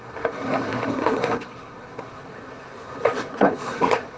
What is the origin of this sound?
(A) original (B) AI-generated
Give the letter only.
B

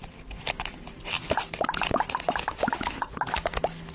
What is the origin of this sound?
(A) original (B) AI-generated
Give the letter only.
A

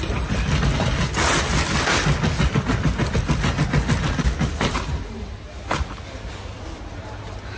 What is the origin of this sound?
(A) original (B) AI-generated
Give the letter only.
A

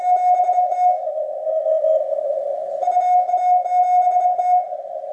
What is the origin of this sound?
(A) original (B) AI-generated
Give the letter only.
A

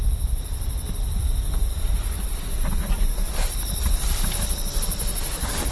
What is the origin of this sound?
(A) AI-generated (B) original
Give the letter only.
A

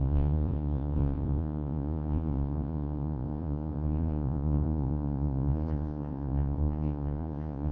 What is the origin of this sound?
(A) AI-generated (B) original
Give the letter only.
A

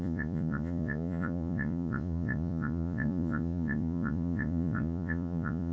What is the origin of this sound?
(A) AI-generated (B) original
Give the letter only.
A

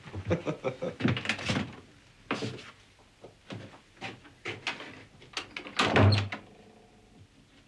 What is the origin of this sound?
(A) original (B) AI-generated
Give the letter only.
A